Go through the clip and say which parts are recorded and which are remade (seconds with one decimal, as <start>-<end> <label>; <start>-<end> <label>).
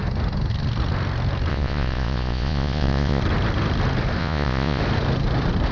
0.0-1.5 recorded; 1.5-3.2 remade; 3.2-4.2 recorded; 4.2-4.8 remade; 4.8-5.7 recorded